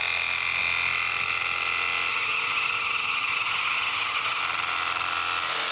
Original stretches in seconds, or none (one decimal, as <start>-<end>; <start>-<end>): 0.0-2.1; 4.4-5.7